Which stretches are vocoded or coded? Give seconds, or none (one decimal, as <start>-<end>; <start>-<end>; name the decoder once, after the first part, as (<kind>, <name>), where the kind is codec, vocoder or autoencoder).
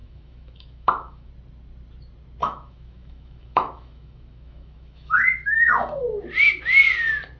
0.0-1.3 (autoencoder, DAC-VAE); 2.4-6.0